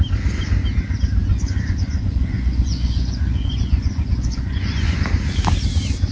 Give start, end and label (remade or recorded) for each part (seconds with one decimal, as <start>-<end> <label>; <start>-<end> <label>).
0.0-1.3 recorded; 1.3-5.0 remade; 5.0-6.1 recorded